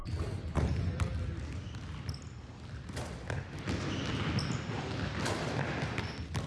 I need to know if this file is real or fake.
real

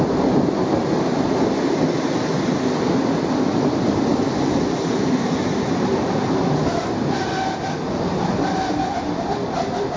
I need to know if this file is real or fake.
real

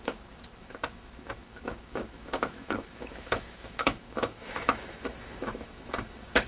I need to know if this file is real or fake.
fake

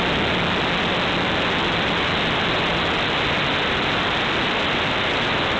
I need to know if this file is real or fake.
real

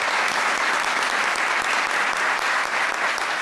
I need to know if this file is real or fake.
real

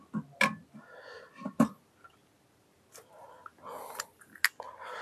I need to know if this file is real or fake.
real